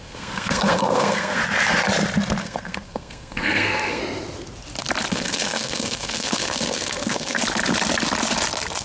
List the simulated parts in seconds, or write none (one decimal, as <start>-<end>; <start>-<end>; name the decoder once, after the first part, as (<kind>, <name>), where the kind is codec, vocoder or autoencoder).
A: 0.0-1.4 (codec, SNAC); 2.4-4.0; 5.1-7.4